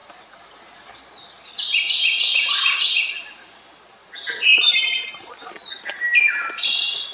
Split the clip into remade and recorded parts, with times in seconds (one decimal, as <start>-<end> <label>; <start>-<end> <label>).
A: 0.0-1.0 remade; 1.0-4.0 recorded; 4.0-5.3 remade; 5.3-7.1 recorded